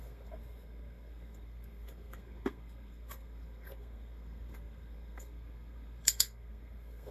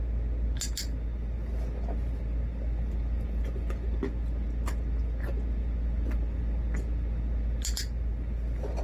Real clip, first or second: second